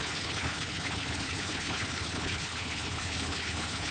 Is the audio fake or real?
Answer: fake